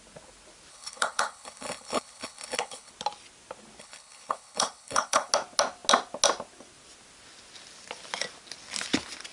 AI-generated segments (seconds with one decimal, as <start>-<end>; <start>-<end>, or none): 0.7-2.9; 3.8-5.3